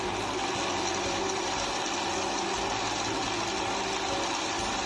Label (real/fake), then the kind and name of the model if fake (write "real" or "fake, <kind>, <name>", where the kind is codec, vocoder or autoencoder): real